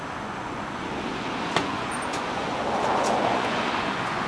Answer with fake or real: fake